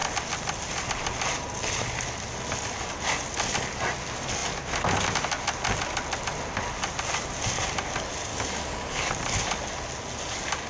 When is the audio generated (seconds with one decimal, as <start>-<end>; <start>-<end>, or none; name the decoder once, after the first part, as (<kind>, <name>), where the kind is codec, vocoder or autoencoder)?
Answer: 8.3-9.1 (codec, DAC)